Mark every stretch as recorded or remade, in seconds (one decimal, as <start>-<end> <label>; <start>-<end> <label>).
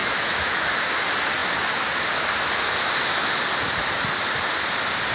0.0-0.7 remade; 0.7-5.1 recorded